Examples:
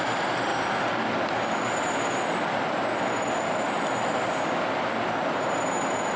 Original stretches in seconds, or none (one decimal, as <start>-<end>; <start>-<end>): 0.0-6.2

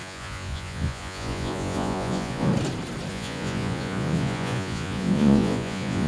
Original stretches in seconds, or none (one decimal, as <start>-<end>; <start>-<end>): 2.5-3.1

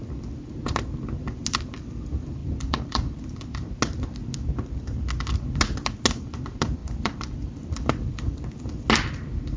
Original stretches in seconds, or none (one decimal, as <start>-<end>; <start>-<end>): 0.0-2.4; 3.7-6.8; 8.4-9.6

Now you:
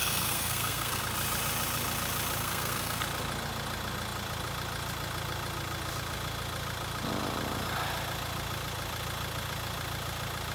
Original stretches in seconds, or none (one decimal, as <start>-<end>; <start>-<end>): 1.0-2.4; 3.0-10.5